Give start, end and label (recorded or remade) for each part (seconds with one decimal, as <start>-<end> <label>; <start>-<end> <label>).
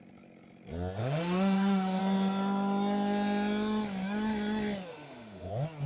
0.0-1.0 recorded; 1.0-2.0 remade; 2.0-4.9 recorded; 4.9-5.5 remade; 5.5-5.9 recorded